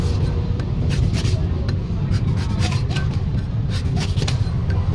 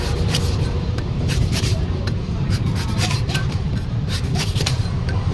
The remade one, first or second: second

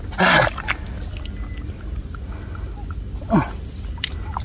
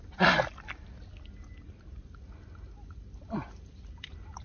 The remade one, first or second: second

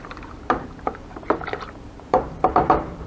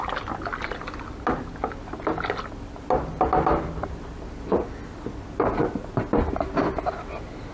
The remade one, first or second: first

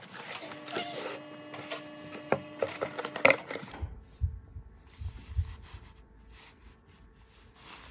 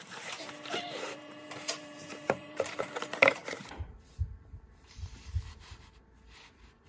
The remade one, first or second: second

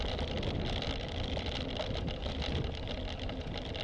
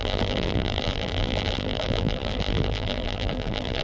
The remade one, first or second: second